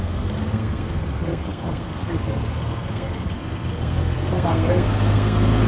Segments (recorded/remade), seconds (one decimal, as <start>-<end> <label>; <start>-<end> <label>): 0.0-5.7 remade